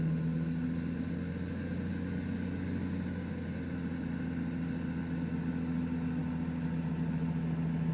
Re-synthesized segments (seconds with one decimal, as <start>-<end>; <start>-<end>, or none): none